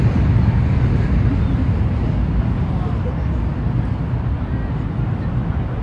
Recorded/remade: recorded